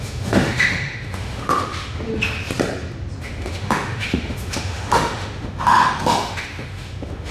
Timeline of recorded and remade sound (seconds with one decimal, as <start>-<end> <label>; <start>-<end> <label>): 0.0-2.1 remade; 2.1-3.2 recorded; 3.2-7.3 remade